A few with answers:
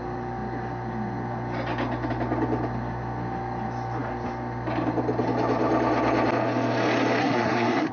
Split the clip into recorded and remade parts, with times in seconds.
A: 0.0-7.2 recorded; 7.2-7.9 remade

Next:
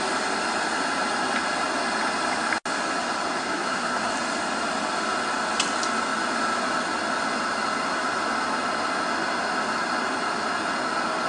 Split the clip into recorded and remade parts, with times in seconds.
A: 0.0-3.4 recorded; 3.4-4.1 remade; 4.1-11.3 recorded

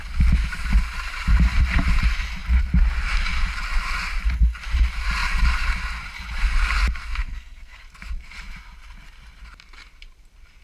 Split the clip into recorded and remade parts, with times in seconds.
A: 0.0-7.0 recorded; 7.0-7.8 remade; 7.8-10.6 recorded

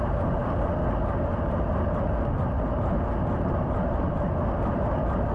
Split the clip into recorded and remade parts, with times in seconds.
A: 0.0-5.3 recorded

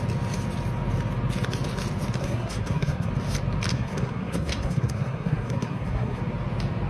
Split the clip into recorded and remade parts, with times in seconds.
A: 0.0-2.2 recorded; 2.2-3.1 remade; 3.1-3.7 recorded; 3.7-6.2 remade; 6.2-6.9 recorded

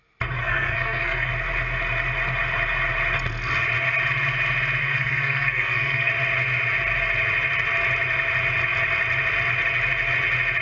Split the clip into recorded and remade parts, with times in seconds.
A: 0.0-0.4 recorded; 0.4-1.3 remade; 1.3-4.8 recorded; 4.8-6.1 remade; 6.1-10.6 recorded

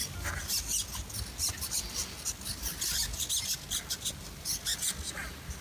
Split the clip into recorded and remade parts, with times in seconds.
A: 0.0-5.6 recorded